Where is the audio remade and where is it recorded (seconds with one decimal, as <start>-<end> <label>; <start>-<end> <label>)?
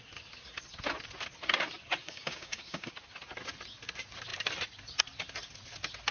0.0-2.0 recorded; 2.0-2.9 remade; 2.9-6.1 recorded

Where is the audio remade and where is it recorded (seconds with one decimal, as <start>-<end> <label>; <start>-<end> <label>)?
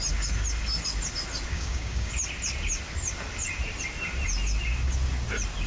0.0-1.5 recorded; 1.5-2.1 remade; 2.1-5.7 recorded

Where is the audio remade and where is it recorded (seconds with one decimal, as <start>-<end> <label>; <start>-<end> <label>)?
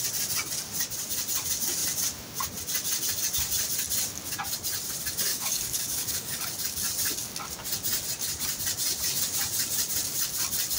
0.0-5.3 recorded; 5.3-6.4 remade; 6.4-10.8 recorded